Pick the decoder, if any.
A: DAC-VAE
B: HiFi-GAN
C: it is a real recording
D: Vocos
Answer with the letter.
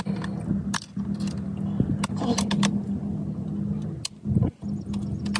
C